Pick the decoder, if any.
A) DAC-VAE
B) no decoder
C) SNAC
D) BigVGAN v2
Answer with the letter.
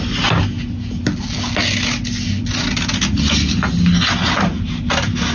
B